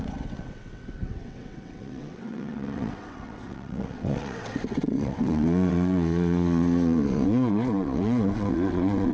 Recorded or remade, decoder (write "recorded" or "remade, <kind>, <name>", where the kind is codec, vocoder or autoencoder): remade, vocoder, WaveNeXt